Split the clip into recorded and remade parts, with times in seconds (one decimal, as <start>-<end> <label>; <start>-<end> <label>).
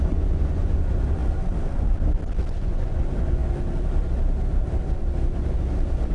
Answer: 0.0-1.2 remade; 1.2-2.6 recorded; 2.6-3.4 remade; 3.4-6.1 recorded